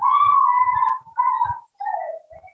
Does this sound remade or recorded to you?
recorded